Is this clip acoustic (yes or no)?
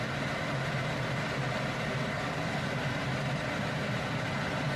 yes